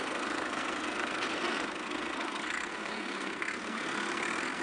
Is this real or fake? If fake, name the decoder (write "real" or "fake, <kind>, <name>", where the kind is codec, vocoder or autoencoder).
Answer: fake, codec, SNAC